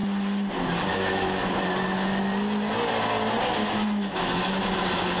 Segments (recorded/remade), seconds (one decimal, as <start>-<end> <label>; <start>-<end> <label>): 0.0-0.9 recorded; 0.9-1.5 remade; 1.5-3.6 recorded; 3.6-4.4 remade; 4.4-5.2 recorded